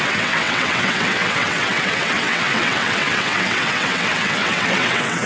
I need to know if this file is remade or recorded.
remade